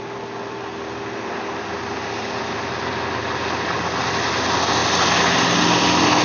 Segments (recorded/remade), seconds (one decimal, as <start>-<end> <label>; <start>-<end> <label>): 0.0-6.2 recorded